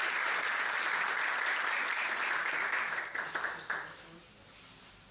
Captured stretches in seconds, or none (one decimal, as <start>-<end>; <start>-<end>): 0.0-5.1